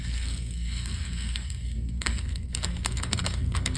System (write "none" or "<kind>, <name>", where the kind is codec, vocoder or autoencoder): codec, SNAC